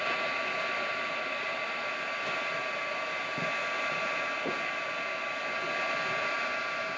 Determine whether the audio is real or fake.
real